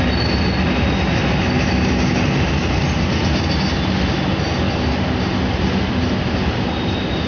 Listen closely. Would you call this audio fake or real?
real